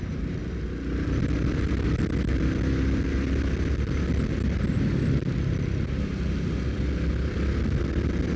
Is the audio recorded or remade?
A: recorded